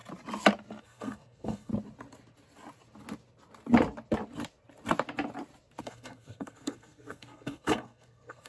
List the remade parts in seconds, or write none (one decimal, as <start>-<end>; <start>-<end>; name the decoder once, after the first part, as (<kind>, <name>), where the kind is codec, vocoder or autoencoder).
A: 0.8-1.7 (codec, SNAC); 5.8-8.5